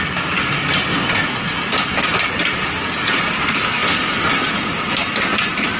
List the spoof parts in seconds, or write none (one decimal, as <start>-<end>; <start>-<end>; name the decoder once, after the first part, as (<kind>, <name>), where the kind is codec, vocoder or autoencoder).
none